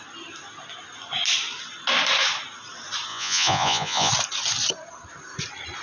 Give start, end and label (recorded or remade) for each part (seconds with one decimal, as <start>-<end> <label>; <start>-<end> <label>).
0.0-3.1 recorded; 3.1-4.1 remade; 4.1-5.8 recorded